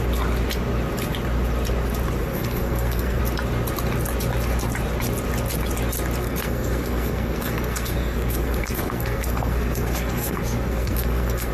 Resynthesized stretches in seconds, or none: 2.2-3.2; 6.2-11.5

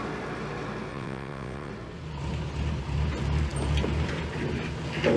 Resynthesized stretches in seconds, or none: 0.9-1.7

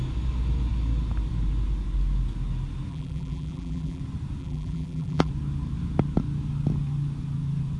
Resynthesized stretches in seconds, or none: 2.9-4.0; 4.4-5.3